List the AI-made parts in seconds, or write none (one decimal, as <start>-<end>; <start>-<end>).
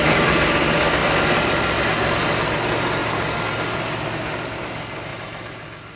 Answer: none